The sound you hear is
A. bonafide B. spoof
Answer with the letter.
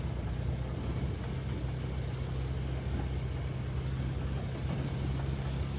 A